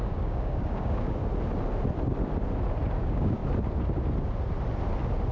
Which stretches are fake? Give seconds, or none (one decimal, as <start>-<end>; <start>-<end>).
0.0-1.2; 3.0-3.4